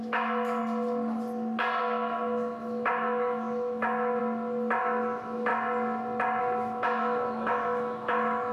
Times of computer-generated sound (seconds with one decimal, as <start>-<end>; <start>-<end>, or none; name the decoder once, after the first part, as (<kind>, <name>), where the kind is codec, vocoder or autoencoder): 0.0-0.6 (autoencoder, DAC-VAE); 1.8-4.2; 4.8-5.5; 6.4-8.5